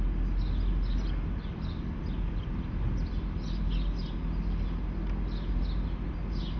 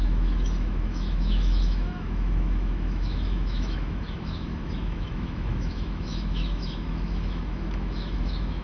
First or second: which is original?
first